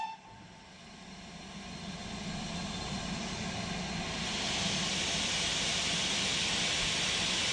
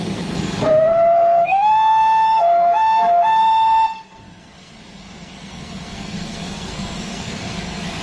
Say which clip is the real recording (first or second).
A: first